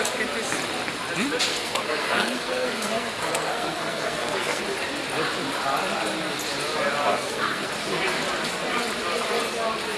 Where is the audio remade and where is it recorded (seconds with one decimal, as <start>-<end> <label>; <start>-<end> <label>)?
0.0-1.5 recorded; 1.5-4.6 remade; 4.6-7.1 recorded; 7.1-7.7 remade; 7.7-10.0 recorded